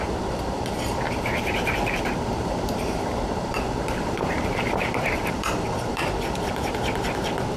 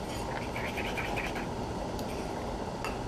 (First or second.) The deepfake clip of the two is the first